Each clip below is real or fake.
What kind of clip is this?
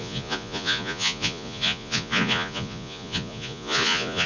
fake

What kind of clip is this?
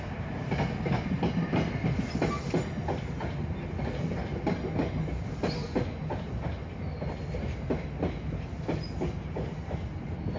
real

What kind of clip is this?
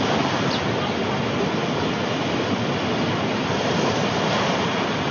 real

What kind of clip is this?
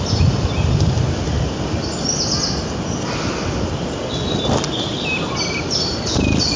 real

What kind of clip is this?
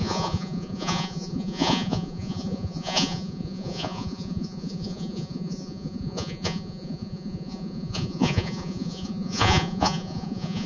fake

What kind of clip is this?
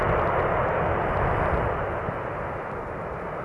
real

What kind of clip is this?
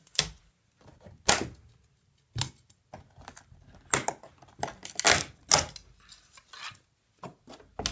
real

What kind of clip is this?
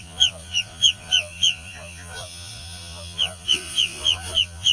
fake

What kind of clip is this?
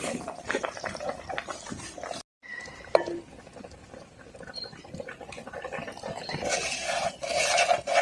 real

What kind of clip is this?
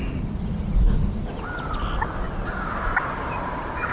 real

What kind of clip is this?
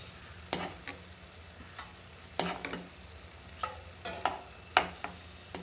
real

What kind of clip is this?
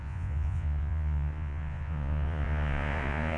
fake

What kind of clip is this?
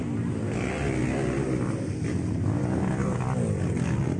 real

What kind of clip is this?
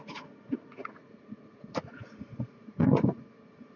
fake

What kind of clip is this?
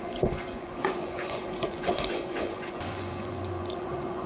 fake